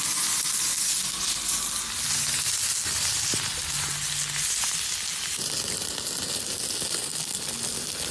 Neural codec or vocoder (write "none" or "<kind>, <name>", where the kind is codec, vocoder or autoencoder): none